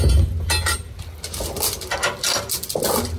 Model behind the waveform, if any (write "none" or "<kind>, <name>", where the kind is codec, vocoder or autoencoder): none